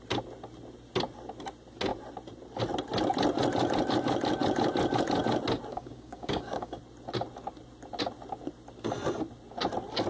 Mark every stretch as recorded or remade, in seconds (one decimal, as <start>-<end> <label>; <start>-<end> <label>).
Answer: 0.0-5.7 recorded; 5.7-6.8 remade; 6.8-10.1 recorded

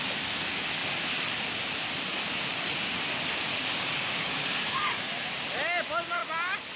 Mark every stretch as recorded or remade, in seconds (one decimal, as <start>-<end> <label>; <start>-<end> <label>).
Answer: 0.0-3.5 recorded; 3.5-5.4 remade; 5.4-6.8 recorded